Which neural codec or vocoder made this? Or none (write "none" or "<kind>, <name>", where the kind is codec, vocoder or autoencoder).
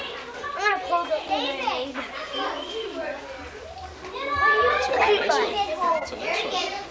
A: none